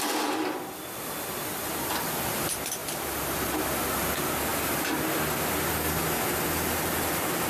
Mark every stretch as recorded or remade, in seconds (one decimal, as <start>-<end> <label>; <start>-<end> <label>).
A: 0.0-2.8 recorded; 2.8-3.6 remade; 3.6-7.5 recorded

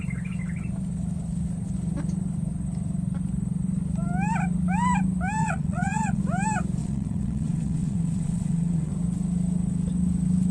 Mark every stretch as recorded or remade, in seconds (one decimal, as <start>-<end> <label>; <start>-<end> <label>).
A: 0.0-5.4 recorded; 5.4-6.2 remade; 6.2-6.8 recorded; 6.8-8.9 remade; 8.9-10.5 recorded

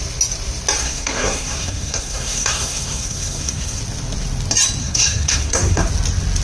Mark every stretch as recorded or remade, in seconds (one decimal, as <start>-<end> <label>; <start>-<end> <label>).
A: 0.0-0.8 recorded; 0.8-3.8 remade; 3.8-4.8 recorded; 4.8-5.9 remade; 5.9-6.4 recorded